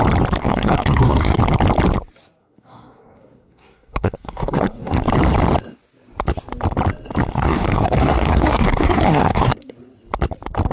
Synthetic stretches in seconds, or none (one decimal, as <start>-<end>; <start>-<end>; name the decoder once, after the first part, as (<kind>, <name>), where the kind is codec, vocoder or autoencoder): 0.4-1.4 (codec, SNAC); 2.4-5.0; 7.3-9.7